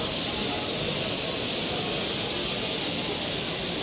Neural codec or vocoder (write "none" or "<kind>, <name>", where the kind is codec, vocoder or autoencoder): none